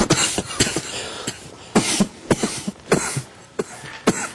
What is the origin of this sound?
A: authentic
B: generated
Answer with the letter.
A